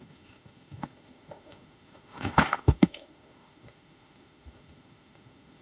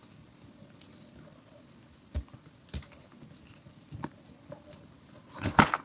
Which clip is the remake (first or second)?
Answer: first